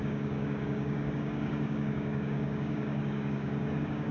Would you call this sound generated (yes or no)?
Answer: yes